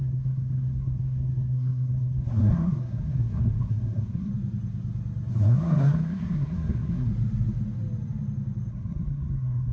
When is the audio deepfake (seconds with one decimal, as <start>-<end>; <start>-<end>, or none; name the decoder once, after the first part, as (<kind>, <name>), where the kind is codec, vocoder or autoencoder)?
0.0-4.3 (codec, SNAC); 5.3-7.1; 8.7-9.7